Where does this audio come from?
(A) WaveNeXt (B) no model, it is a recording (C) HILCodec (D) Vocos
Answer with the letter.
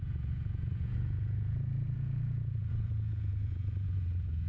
D